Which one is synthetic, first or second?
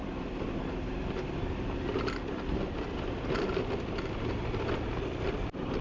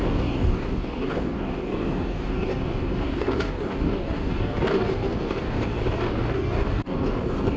second